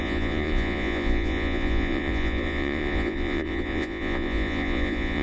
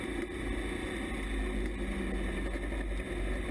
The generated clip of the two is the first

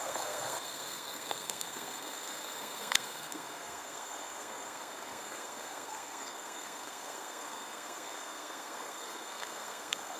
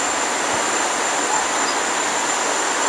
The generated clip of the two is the first